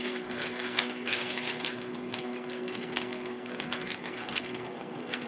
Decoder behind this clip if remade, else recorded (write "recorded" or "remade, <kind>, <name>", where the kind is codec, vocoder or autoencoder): remade, codec, SNAC